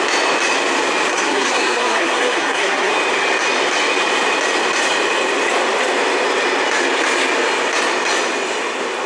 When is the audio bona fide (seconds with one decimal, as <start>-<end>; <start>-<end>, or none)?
0.0-1.1; 2.9-9.1